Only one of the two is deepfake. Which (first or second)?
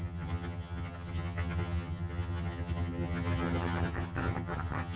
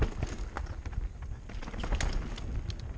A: first